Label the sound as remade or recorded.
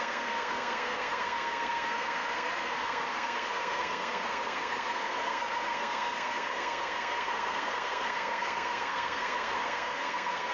remade